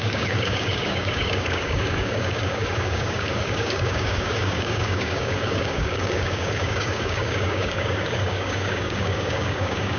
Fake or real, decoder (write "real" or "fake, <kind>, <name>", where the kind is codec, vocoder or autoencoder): fake, codec, DAC